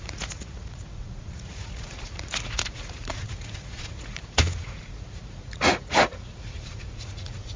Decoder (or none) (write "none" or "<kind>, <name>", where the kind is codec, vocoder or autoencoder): vocoder, Vocos